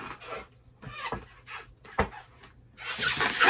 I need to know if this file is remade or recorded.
recorded